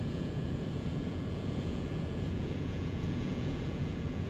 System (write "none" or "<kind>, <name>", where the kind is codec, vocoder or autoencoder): vocoder, Vocos